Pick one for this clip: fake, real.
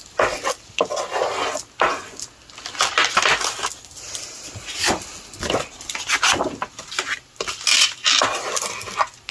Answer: real